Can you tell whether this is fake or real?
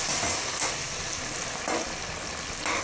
real